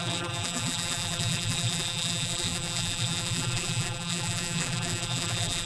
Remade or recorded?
remade